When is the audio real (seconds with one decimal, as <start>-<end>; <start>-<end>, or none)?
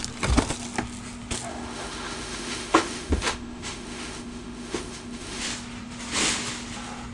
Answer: 0.0-1.5; 5.4-7.1